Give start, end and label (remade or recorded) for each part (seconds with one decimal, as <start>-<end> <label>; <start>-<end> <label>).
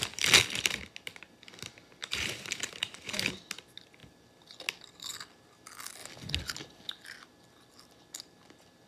0.0-2.0 recorded; 2.0-3.4 remade; 3.4-8.9 recorded